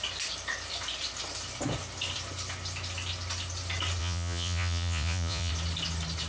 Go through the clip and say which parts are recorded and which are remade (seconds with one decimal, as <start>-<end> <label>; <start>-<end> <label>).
0.0-4.0 recorded; 4.0-5.5 remade; 5.5-6.3 recorded